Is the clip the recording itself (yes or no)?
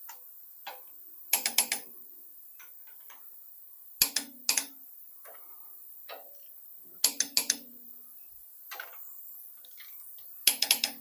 yes